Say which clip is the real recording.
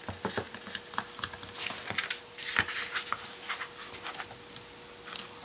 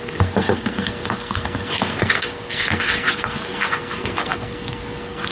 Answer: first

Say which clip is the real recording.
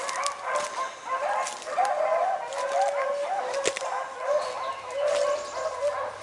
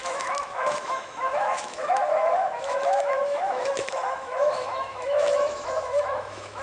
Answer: first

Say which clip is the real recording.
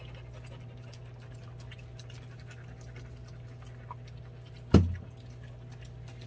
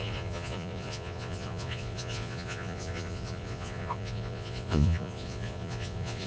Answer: first